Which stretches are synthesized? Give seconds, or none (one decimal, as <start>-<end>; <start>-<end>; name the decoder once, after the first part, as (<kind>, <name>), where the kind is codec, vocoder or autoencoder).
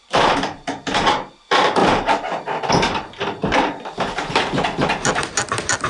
0.0-1.3 (vocoder, BigVGAN v2)